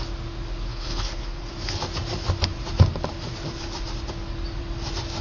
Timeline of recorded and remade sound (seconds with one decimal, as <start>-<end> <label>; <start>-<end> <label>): 0.0-0.7 recorded; 0.7-1.5 remade; 1.5-5.2 recorded